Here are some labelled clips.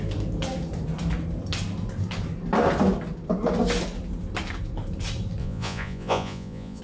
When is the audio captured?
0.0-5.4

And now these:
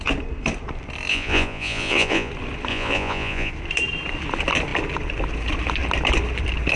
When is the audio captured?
0.0-1.1; 2.3-2.7; 3.5-6.8